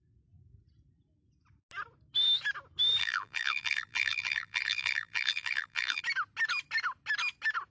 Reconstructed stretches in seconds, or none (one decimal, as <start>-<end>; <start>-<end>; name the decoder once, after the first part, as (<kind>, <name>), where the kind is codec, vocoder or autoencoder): 3.0-6.0 (vocoder, BigVGAN v2)